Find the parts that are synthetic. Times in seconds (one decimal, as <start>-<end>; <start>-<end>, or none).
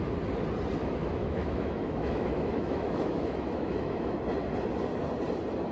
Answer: 0.8-4.2